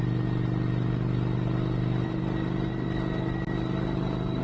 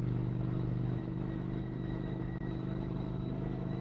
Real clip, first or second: first